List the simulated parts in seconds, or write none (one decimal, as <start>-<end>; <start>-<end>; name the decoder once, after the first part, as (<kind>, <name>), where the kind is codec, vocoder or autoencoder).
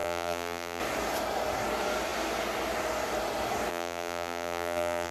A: 0.0-0.8 (vocoder, BigVGAN v2); 3.7-5.1